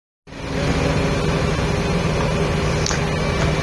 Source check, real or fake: real